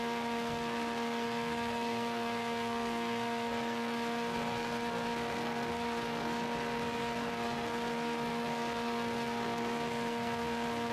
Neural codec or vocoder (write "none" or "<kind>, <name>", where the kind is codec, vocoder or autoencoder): codec, SNAC